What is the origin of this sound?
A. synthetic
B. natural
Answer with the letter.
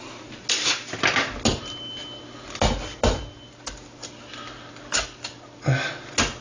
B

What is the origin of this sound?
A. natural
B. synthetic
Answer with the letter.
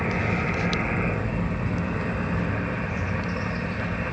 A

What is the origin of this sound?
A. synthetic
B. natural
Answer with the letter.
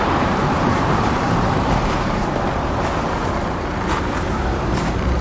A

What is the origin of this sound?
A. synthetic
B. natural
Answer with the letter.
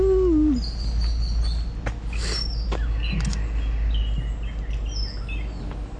B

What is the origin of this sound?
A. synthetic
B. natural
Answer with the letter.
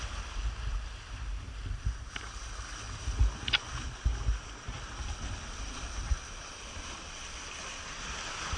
B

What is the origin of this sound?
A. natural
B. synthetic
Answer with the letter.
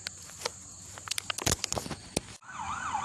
A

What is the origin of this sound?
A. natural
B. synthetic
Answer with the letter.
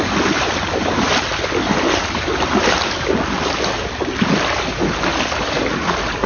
A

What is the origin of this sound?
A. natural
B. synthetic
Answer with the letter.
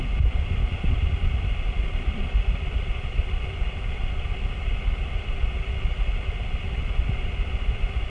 A